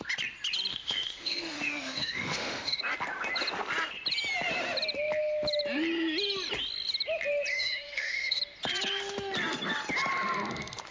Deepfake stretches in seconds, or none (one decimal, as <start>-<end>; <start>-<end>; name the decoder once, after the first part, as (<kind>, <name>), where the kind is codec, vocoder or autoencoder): 0.7-2.8 (autoencoder, DAC-VAE); 7.5-8.4